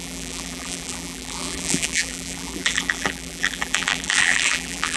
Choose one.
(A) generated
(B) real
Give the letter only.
A